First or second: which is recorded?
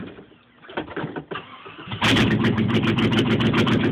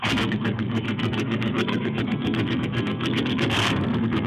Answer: first